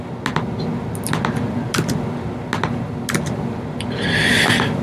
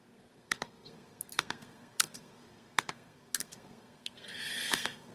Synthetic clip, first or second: second